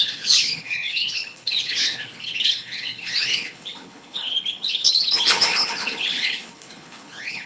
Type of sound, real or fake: fake